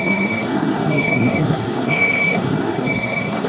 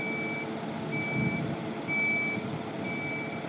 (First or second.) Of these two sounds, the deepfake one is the first